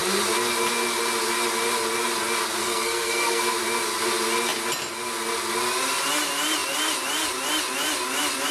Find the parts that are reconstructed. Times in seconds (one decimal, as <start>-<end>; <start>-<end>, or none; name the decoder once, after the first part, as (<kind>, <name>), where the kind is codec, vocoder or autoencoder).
2.6-3.4 (codec, SNAC)